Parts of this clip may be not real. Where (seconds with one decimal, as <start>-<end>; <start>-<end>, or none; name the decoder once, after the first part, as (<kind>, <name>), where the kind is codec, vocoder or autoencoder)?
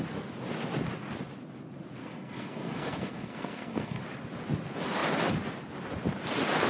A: 2.0-4.0 (codec, SNAC)